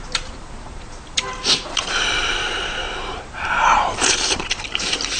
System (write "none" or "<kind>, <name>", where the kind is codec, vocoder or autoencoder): vocoder, BigVGAN v2